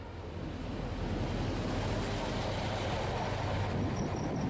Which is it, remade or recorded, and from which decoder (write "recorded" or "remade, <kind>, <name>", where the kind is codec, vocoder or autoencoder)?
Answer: recorded